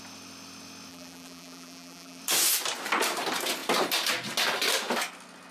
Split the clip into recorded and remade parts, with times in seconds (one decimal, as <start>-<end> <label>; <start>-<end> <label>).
0.0-0.9 recorded; 0.9-2.2 remade; 2.2-5.5 recorded